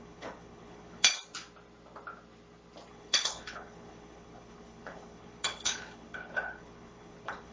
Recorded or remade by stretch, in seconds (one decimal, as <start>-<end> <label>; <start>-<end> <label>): 0.0-1.1 remade; 1.1-2.9 recorded; 2.9-7.5 remade